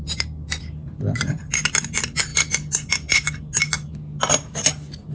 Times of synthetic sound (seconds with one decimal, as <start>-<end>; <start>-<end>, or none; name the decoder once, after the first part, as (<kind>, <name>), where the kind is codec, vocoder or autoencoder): none